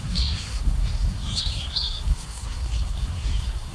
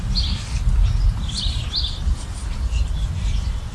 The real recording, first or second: second